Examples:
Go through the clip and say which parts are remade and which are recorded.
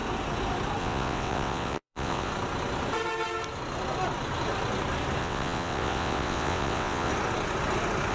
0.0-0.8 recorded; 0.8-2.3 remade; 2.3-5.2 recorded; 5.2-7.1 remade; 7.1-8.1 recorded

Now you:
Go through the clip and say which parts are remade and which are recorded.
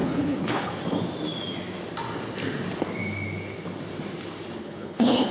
0.0-0.7 remade; 0.7-4.6 recorded; 4.6-5.3 remade